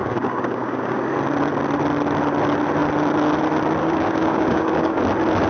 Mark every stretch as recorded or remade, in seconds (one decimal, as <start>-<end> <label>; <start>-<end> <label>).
0.0-1.0 remade; 1.0-3.8 recorded; 3.8-5.0 remade; 5.0-5.5 recorded